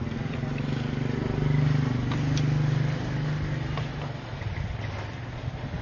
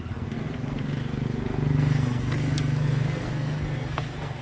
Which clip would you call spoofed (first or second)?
second